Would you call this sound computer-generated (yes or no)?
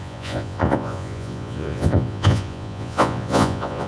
yes